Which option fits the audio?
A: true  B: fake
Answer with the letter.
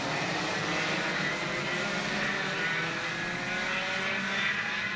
A